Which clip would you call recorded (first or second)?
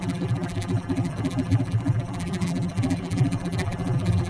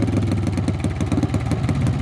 second